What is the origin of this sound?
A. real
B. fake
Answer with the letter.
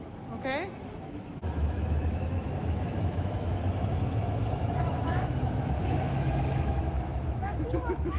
B